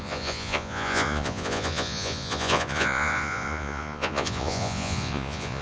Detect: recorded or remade remade